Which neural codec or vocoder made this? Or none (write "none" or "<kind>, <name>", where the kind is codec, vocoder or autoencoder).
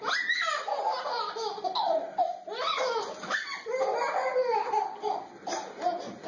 none